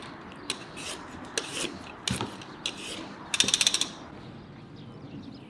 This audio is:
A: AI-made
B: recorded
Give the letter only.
B